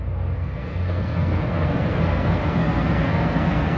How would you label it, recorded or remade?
remade